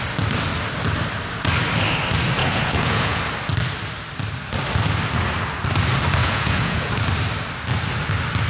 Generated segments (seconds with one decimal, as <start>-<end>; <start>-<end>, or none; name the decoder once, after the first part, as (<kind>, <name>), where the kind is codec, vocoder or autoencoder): 2.4-3.2 (vocoder, Vocos); 6.2-7.0